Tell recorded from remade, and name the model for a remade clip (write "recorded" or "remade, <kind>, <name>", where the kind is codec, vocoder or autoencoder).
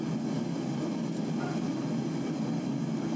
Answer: recorded